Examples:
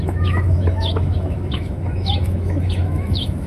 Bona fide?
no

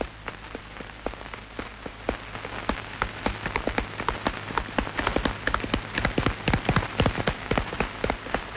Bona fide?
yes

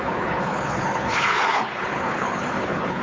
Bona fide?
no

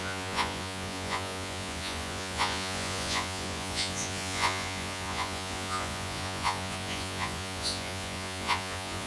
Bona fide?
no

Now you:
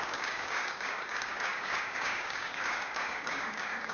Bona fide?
no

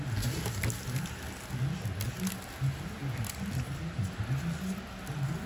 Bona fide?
yes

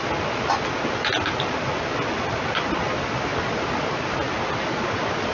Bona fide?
yes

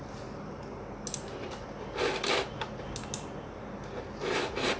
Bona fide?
yes